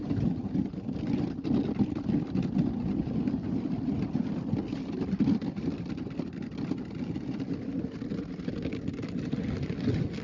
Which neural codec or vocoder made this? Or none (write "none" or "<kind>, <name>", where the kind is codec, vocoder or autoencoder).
none